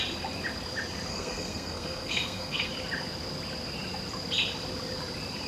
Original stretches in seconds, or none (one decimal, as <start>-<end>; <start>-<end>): 0.0-1.1; 2.7-5.5